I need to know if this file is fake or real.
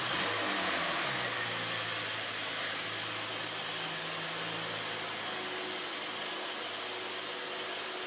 real